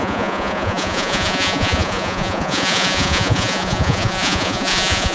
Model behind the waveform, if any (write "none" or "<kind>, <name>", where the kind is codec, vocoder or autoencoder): vocoder, Vocos